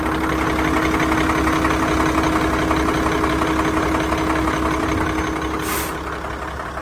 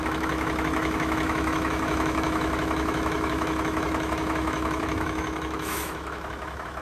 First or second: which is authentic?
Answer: first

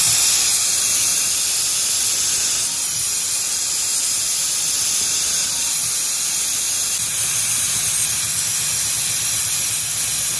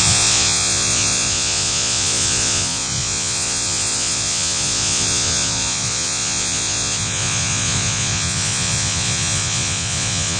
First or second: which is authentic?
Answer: first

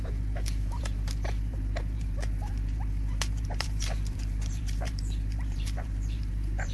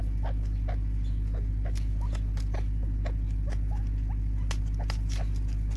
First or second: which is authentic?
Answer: second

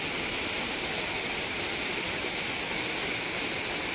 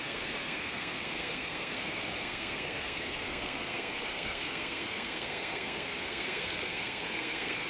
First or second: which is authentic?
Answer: first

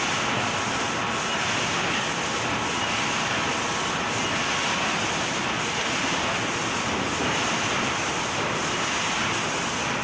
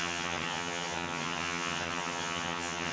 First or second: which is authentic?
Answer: first